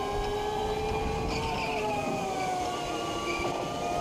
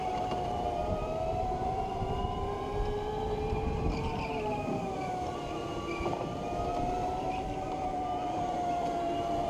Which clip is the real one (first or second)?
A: first